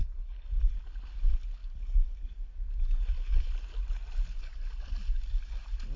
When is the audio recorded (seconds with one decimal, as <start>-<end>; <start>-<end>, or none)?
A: 0.6-6.0